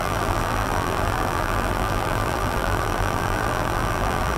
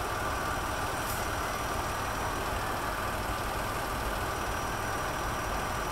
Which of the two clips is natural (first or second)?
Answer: second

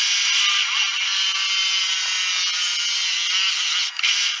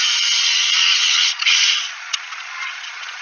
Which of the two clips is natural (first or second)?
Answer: first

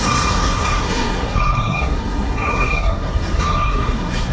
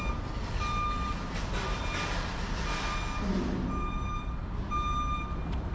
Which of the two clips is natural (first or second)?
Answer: second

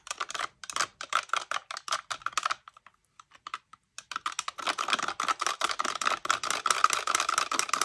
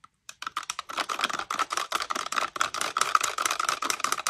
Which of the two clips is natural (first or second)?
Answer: first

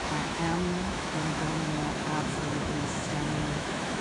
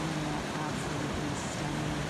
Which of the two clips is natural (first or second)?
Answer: second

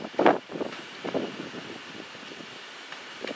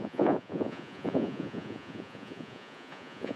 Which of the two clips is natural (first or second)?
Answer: first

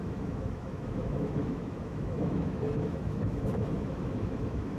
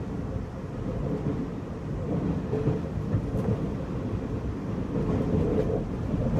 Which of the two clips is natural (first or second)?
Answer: second